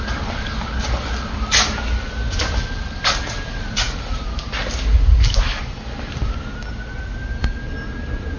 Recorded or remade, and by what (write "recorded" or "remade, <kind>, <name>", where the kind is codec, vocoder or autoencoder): recorded